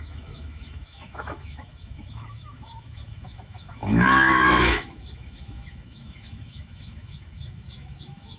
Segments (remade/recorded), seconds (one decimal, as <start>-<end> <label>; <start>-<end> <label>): 0.0-8.4 remade